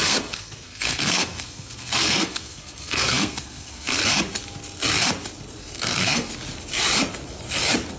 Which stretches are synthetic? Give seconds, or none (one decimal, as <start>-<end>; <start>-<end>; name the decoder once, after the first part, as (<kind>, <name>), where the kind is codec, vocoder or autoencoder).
0.0-4.0 (codec, SNAC); 5.6-6.3